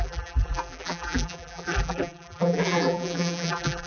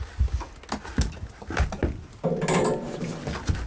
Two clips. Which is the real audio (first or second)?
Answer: second